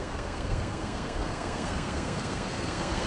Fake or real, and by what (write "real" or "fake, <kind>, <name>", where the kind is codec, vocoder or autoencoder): fake, codec, SNAC